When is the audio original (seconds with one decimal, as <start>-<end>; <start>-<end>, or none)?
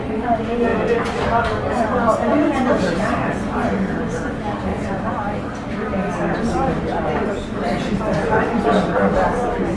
0.0-4.7